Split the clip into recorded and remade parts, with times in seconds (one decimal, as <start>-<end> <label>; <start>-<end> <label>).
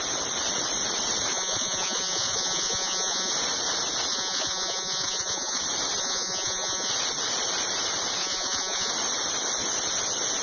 0.0-1.3 recorded; 1.3-3.3 remade; 3.3-4.1 recorded; 4.1-5.6 remade; 5.6-6.0 recorded; 6.0-6.9 remade; 6.9-8.2 recorded; 8.2-8.9 remade; 8.9-10.4 recorded